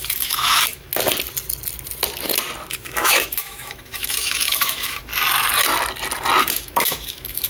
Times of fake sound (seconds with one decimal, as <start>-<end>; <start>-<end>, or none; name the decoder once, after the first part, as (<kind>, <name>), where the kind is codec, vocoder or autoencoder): 0.0-0.9 (autoencoder, DAC-VAE); 2.7-5.1; 6.4-7.5